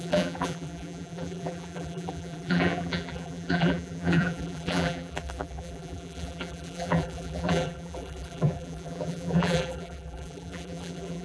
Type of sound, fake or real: fake